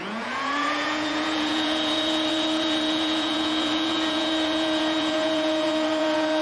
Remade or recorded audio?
remade